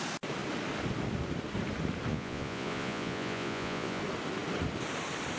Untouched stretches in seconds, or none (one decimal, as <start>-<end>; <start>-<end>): 0.0-2.1; 4.0-5.4